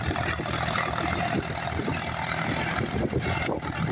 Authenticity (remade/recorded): recorded